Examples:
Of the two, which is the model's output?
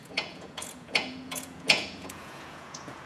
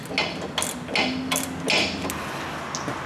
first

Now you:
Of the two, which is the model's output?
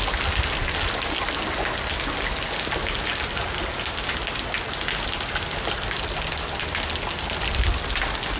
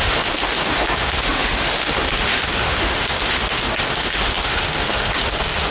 second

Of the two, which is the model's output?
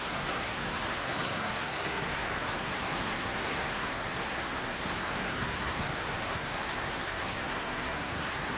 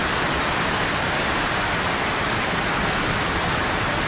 first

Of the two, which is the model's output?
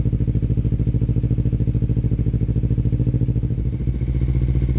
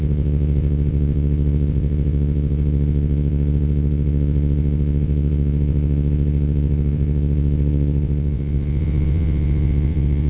second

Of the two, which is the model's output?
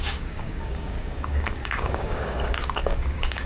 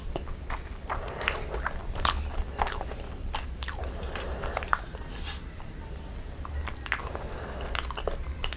first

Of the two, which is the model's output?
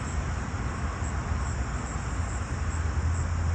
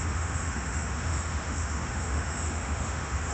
second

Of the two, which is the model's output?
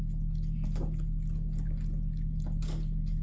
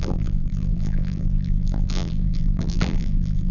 second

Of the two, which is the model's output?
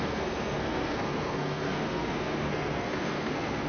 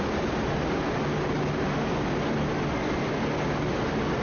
first